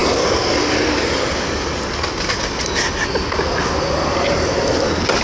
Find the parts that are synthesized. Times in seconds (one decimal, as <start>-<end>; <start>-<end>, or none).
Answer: none